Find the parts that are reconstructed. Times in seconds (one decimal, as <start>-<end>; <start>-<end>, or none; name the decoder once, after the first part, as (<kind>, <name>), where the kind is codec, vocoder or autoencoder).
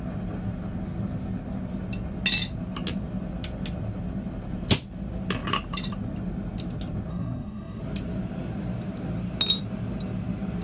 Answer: 7.1-7.8 (codec, SNAC)